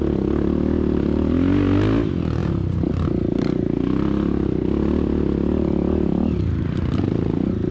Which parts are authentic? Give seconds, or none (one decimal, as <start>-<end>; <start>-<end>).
0.0-7.7